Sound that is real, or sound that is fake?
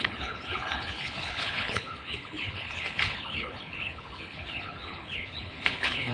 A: fake